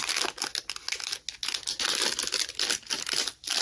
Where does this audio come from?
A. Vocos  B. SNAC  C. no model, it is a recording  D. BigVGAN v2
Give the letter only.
C